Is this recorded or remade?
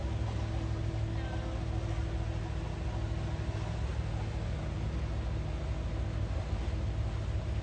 recorded